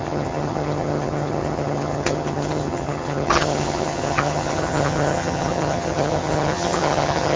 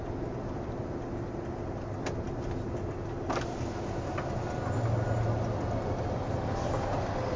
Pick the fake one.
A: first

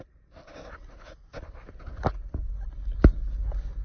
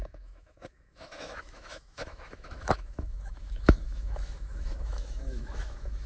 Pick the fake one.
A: second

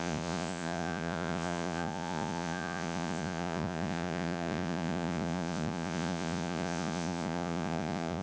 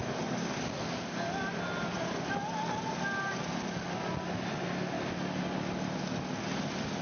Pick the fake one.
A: first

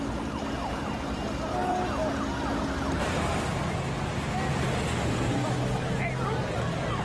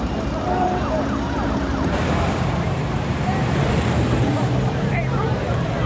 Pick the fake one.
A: second